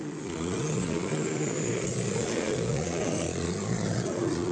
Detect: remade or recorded remade